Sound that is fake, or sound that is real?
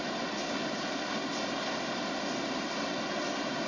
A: real